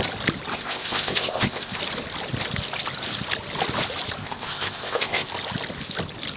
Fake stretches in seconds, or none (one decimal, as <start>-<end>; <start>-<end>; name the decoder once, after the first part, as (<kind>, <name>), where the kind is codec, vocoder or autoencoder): 0.5-1.8 (codec, ZipCodec); 4.2-5.3